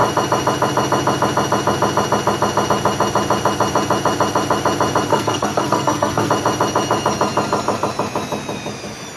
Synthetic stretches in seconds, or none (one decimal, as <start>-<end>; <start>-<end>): 5.1-6.3